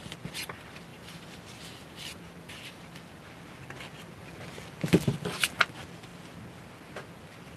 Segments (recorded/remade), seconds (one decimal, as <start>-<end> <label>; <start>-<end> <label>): 0.0-0.9 recorded; 0.9-2.8 remade; 2.8-7.6 recorded